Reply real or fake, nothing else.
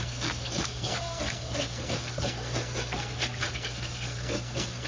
fake